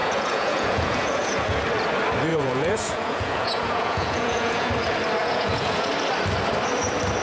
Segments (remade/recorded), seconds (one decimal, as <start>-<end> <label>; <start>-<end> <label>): 0.0-1.6 remade; 1.6-2.3 recorded; 2.3-4.7 remade; 4.7-5.2 recorded; 5.2-5.9 remade; 5.9-7.2 recorded